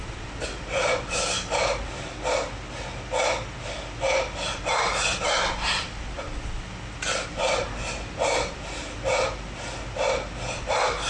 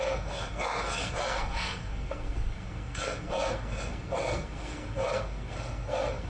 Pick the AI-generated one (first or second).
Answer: second